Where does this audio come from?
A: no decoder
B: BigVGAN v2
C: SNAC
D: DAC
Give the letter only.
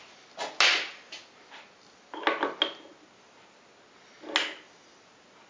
A